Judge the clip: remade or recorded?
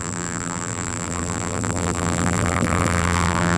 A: remade